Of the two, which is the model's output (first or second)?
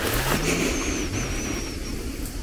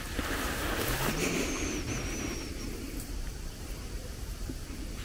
second